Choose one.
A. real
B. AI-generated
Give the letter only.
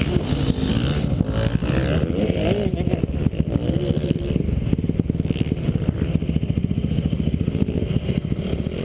A